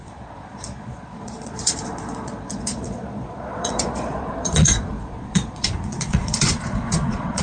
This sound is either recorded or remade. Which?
remade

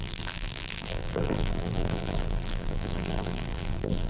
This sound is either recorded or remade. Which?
remade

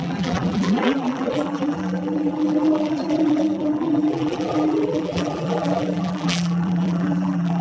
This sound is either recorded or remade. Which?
remade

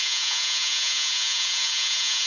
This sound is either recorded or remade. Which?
remade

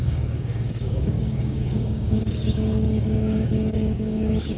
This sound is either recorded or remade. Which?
remade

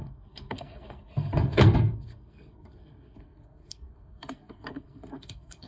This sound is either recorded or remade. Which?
remade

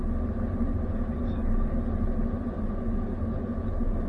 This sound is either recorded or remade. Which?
recorded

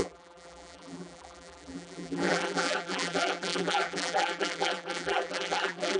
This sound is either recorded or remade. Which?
remade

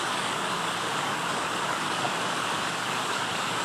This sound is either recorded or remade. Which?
remade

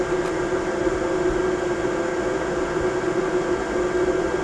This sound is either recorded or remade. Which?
recorded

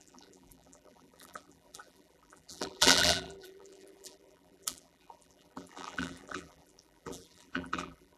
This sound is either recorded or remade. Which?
remade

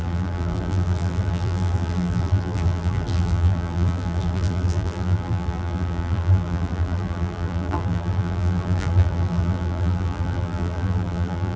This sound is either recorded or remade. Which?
remade